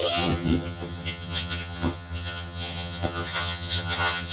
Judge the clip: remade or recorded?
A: remade